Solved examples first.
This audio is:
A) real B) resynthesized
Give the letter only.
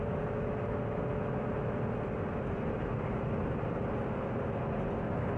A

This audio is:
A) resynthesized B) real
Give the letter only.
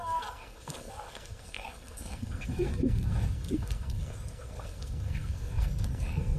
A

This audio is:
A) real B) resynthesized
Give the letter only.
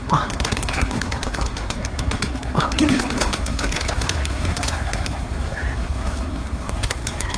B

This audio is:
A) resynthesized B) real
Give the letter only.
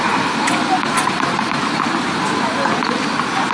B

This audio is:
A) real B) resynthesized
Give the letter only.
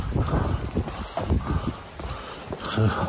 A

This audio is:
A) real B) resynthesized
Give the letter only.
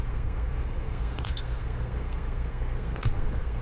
B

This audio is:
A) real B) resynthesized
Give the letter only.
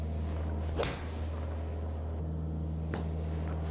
A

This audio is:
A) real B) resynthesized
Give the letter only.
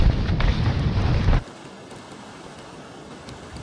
A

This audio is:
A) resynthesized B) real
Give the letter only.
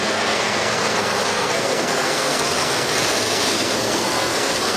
A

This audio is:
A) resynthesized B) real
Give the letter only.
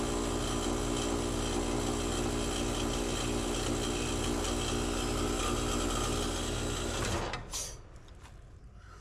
B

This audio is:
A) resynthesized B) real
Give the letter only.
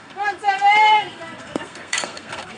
A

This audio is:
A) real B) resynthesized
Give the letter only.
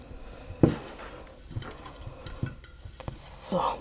A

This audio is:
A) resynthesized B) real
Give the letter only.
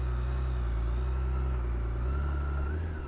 B